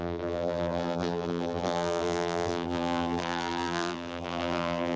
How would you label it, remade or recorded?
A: remade